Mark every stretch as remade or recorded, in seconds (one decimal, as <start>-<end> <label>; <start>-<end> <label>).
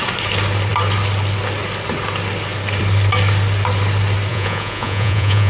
0.0-4.3 recorded; 4.3-5.5 remade